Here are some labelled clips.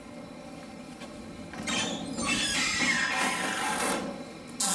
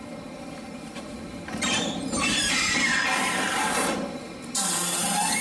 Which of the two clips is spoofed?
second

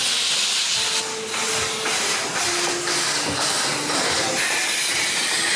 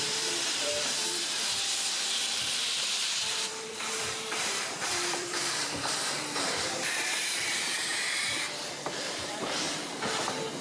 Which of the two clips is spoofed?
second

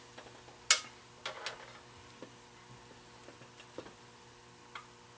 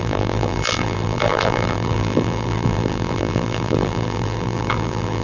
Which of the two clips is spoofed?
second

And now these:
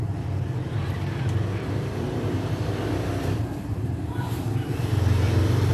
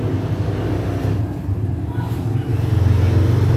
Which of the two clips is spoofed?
first